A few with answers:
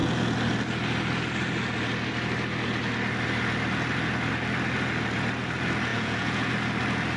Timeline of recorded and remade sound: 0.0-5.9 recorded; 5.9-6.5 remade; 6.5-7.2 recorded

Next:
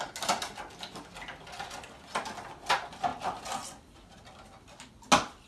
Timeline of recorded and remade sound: 0.0-5.5 recorded

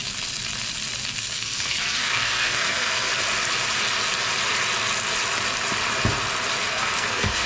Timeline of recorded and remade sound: 0.0-1.2 recorded; 1.2-3.1 remade; 3.1-6.7 recorded; 6.7-7.5 remade